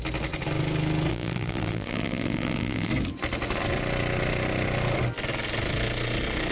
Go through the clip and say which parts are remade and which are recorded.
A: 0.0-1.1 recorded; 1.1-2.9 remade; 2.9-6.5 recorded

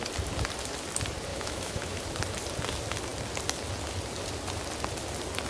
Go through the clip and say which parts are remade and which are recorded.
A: 0.0-1.3 recorded; 1.3-2.0 remade; 2.0-5.5 recorded

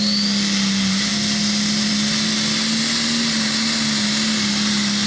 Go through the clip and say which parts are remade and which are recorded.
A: 0.0-5.1 recorded

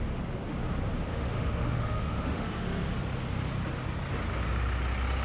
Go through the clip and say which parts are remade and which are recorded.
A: 0.0-1.1 recorded; 1.1-2.9 remade; 2.9-5.2 recorded

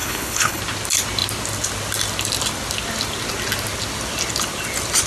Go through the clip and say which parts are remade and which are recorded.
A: 0.0-0.6 remade; 0.6-5.1 recorded

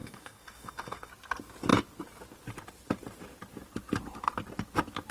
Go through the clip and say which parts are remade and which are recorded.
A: 0.0-1.1 remade; 1.1-5.1 recorded

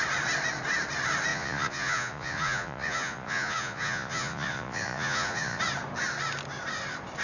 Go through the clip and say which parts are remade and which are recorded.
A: 0.0-1.3 recorded; 1.3-5.6 remade; 5.6-7.2 recorded